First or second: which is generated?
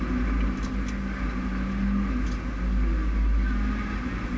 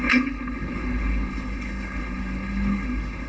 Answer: second